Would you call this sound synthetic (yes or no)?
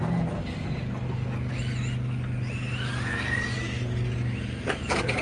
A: no